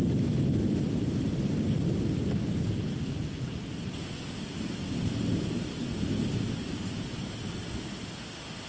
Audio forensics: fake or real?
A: real